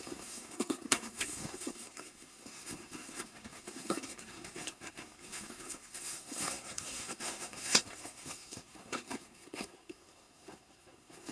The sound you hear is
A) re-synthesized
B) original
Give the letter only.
A